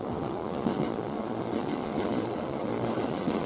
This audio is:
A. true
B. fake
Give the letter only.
B